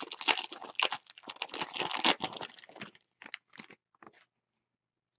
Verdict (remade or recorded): recorded